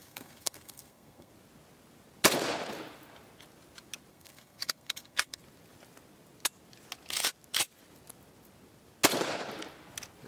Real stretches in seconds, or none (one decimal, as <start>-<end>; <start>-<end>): 1.3-4.1; 5.4-10.3